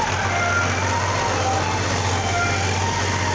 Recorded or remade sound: recorded